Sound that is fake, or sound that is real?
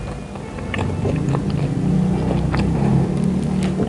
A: real